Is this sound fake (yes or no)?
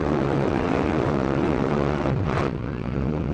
yes